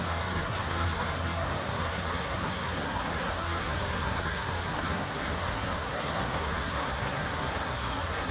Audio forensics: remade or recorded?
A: remade